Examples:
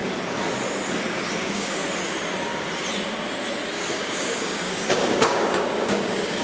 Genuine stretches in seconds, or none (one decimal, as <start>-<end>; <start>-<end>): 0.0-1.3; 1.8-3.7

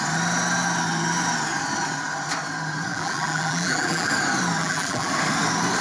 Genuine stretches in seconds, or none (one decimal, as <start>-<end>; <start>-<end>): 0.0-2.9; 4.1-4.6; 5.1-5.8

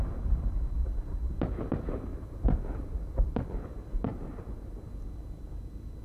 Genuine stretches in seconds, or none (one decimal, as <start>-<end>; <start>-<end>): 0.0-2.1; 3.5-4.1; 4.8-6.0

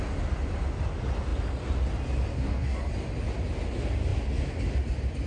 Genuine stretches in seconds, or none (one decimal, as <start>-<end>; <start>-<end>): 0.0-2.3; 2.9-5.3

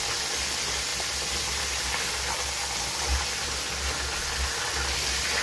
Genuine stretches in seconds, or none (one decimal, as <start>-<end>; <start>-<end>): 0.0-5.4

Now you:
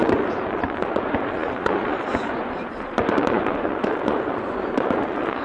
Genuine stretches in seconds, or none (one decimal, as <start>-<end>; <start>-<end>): none